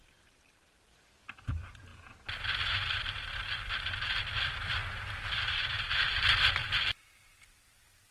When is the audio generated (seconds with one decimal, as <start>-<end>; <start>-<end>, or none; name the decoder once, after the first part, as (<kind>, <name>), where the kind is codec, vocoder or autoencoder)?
0.0-1.9 (vocoder, BigVGAN v2); 3.8-4.8; 5.3-6.6